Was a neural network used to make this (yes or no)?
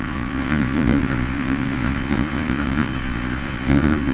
yes